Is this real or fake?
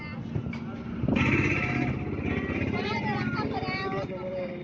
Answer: real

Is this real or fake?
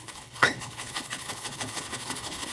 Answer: fake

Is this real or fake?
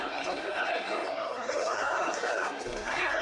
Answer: fake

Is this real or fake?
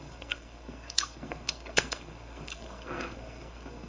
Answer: fake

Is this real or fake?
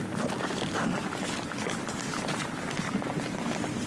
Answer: real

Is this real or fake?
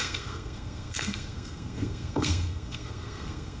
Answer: fake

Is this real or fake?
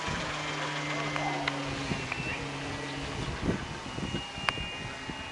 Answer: real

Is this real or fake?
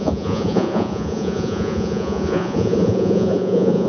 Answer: fake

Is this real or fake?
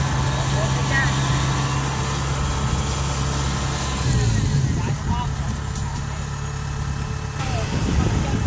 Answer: real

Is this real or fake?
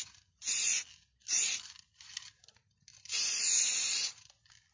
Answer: real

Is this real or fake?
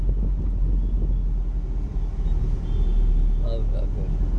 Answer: real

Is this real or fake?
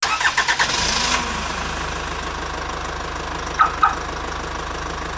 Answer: real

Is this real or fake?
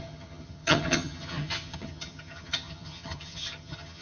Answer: fake